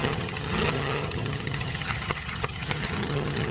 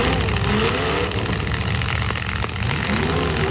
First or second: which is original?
second